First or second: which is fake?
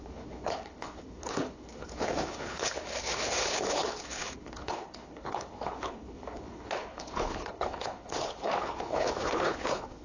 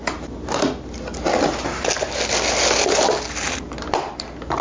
first